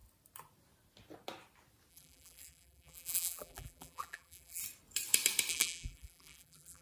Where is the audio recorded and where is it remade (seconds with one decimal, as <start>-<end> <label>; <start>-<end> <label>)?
0.0-1.9 recorded; 1.9-4.6 remade; 4.6-5.5 recorded; 5.5-6.8 remade

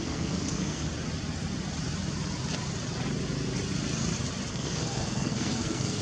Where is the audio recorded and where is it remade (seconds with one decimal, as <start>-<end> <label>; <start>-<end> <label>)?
0.0-0.9 remade; 0.9-4.5 recorded; 4.5-6.0 remade

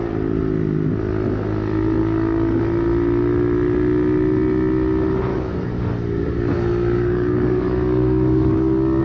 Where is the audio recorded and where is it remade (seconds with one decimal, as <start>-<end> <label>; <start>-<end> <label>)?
0.0-2.0 recorded; 2.0-2.6 remade; 2.6-5.3 recorded; 5.3-9.0 remade

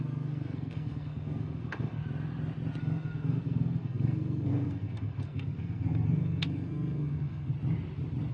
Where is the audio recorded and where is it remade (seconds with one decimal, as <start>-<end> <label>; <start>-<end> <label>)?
0.0-2.0 remade; 2.0-2.8 recorded; 2.8-7.5 remade; 7.5-8.3 recorded

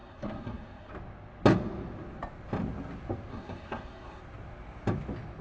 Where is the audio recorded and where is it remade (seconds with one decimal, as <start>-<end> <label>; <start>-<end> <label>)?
0.0-0.9 remade; 0.9-3.3 recorded; 3.3-4.2 remade; 4.2-5.4 recorded

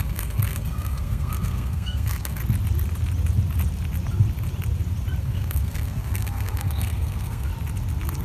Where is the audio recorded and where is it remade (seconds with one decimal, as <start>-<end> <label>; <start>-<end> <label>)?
0.0-2.4 remade; 2.4-5.2 recorded; 5.2-7.5 remade; 7.5-8.2 recorded